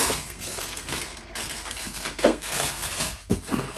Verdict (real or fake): fake